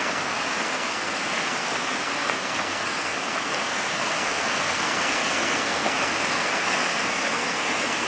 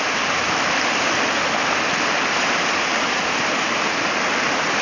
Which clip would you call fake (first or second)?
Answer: first